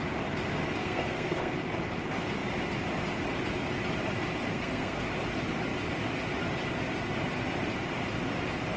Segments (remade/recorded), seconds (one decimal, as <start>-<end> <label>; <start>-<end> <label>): 0.0-0.8 recorded; 0.8-1.5 remade; 1.5-4.5 recorded; 4.5-5.0 remade; 5.0-8.8 recorded

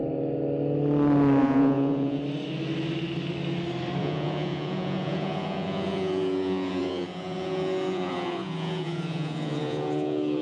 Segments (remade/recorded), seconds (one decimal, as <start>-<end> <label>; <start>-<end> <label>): 0.0-1.4 recorded; 1.4-2.2 remade; 2.2-4.0 recorded; 4.0-10.4 remade

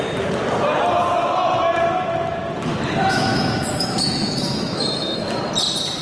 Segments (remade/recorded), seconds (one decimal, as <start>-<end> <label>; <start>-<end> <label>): 0.0-3.0 recorded; 3.0-5.4 remade; 5.4-6.0 recorded

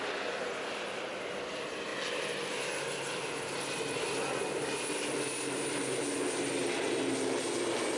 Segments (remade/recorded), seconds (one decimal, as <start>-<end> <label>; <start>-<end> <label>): 0.0-8.0 recorded